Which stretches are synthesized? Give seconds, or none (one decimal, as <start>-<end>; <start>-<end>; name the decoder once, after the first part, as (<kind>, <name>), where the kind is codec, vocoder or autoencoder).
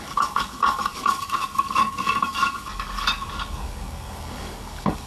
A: 0.0-5.1 (codec, DAC)